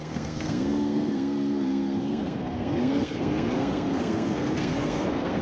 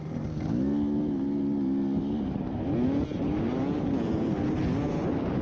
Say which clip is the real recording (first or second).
second